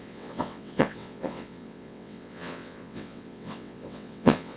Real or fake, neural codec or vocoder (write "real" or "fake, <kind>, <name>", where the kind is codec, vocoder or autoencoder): fake, vocoder, WaveNeXt